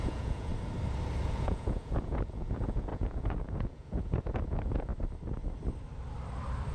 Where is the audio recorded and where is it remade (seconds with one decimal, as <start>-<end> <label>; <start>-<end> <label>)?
0.0-0.5 remade; 0.5-1.3 recorded; 1.3-4.9 remade; 4.9-6.7 recorded